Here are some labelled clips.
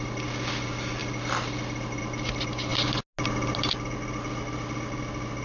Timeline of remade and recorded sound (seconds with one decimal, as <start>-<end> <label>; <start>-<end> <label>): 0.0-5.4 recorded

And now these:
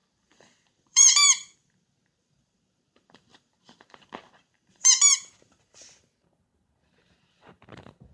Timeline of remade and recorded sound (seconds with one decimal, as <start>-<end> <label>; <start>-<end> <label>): 0.0-8.1 remade

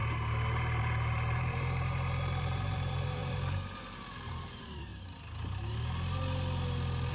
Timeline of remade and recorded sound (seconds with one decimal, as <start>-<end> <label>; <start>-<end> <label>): 0.0-0.8 recorded; 0.8-4.9 remade; 4.9-7.1 recorded